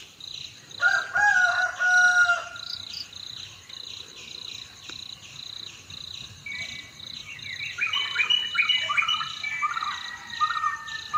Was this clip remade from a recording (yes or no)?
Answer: no